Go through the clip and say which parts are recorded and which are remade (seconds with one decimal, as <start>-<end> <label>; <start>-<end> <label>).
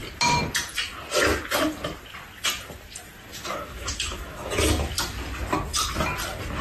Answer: 0.0-3.3 recorded; 3.3-4.5 remade; 4.5-6.6 recorded